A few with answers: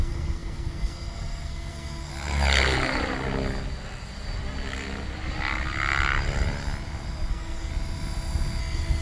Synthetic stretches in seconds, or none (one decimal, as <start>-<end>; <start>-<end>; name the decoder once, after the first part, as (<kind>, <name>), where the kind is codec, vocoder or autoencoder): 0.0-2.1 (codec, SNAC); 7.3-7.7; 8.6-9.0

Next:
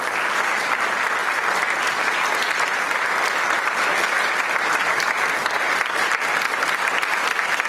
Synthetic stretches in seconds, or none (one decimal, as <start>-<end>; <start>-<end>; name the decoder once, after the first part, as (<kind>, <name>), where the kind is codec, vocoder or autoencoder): none

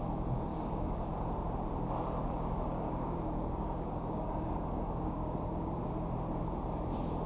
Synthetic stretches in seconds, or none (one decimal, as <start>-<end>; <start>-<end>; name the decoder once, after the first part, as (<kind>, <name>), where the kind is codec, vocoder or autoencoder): 0.5-1.1 (codec, DAC); 2.2-5.8